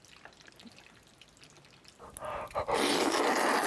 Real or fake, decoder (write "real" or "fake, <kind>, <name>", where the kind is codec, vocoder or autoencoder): real